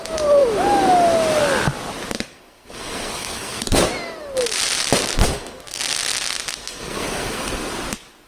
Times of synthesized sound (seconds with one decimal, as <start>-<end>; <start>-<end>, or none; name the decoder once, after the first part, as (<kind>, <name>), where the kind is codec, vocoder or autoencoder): 2.3-3.8 (codec, SNAC); 5.2-5.8; 6.6-7.7